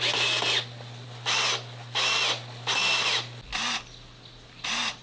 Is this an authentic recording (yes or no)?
yes